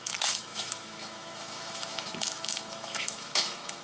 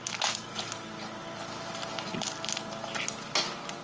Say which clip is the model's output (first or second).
first